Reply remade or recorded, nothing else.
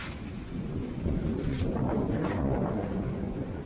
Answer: remade